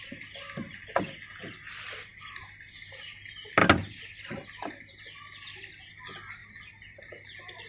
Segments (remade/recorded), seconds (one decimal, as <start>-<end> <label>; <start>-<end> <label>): 0.0-2.1 recorded; 2.1-2.9 remade; 2.9-7.7 recorded